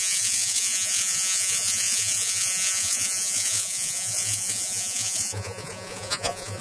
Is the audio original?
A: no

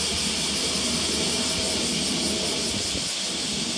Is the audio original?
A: yes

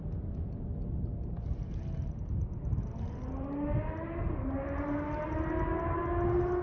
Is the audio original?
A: yes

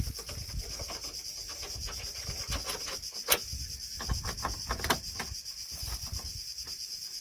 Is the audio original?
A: yes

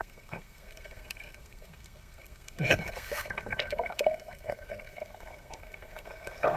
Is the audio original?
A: no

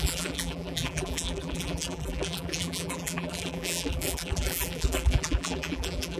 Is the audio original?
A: no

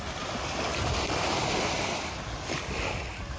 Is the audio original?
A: yes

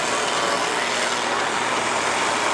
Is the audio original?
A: yes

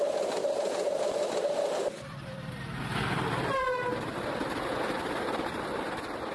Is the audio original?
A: yes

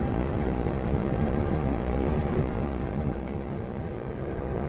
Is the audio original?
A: no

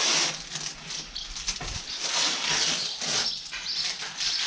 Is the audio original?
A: yes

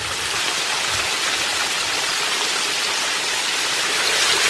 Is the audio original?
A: yes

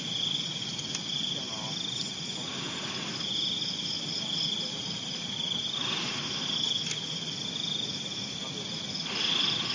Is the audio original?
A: yes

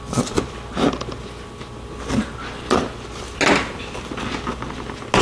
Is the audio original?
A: yes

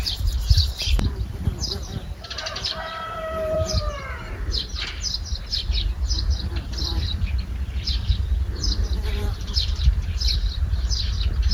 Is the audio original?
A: no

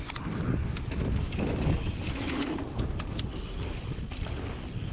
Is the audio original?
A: yes